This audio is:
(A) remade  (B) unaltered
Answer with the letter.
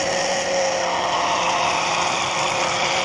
B